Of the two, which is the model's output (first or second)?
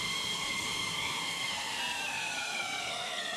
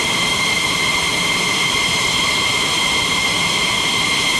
first